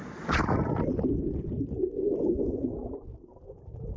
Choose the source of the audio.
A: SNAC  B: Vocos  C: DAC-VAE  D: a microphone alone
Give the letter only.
D